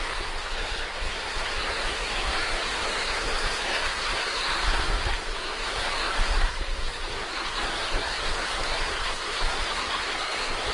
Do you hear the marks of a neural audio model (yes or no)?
yes